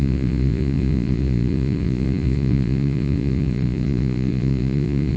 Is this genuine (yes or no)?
no